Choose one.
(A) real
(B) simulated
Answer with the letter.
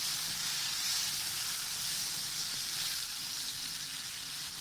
A